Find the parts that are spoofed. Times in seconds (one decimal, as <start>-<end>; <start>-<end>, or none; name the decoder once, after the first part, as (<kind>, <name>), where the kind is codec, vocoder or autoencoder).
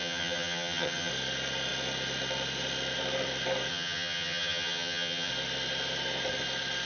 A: 0.0-1.1 (vocoder, HiFi-GAN); 3.7-5.3